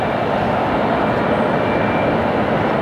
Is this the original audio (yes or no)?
yes